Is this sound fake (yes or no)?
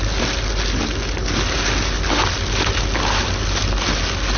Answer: no